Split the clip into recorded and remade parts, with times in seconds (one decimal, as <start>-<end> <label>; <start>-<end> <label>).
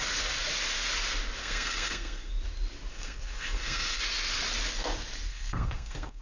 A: 0.0-1.4 recorded; 1.4-2.3 remade; 2.3-2.9 recorded; 2.9-4.0 remade; 4.0-5.3 recorded; 5.3-6.2 remade